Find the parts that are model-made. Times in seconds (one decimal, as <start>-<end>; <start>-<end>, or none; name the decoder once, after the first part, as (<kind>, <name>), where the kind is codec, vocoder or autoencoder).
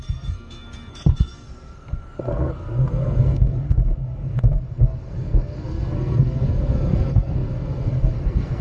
0.0-8.6 (codec, SNAC)